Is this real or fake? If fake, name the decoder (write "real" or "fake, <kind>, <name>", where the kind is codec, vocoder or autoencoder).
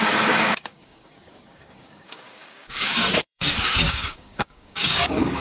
fake, codec, DAC